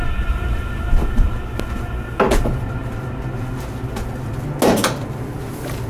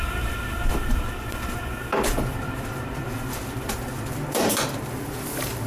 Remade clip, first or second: second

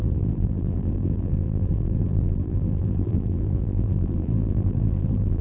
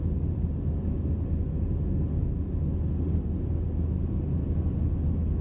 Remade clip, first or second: first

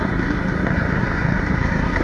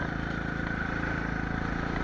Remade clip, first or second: first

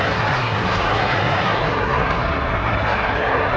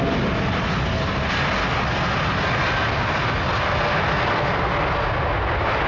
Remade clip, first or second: first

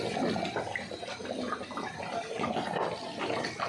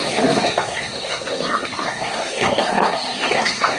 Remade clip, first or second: second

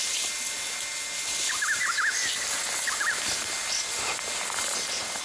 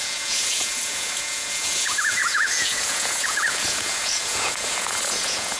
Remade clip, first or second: second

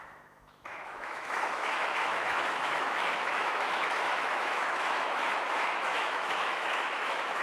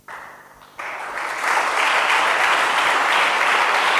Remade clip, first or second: first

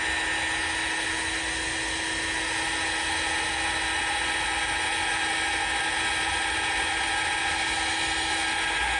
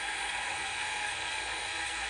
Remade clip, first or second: second